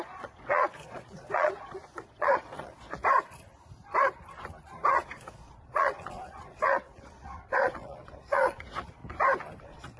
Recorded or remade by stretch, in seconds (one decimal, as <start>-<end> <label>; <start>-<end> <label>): 0.0-3.0 remade; 3.0-4.9 recorded; 4.9-9.0 remade; 9.0-9.6 recorded; 9.6-10.0 remade